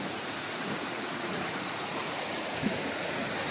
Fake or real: fake